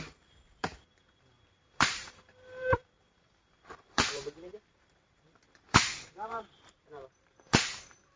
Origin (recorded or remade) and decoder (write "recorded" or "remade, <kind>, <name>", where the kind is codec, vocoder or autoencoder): remade, vocoder, BigVGAN v2